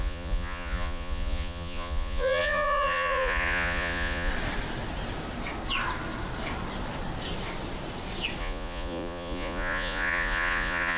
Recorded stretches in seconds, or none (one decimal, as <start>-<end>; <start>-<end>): 4.3-8.4